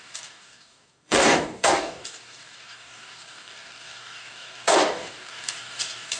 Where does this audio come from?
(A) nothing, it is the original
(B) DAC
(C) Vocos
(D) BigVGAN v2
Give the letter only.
B